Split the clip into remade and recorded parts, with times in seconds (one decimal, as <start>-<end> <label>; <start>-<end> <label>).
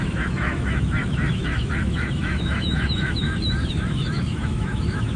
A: 0.0-5.2 remade